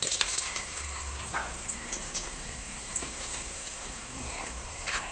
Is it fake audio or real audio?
fake